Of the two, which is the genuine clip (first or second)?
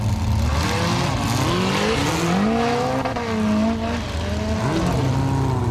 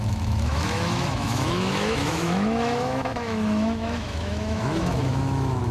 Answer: first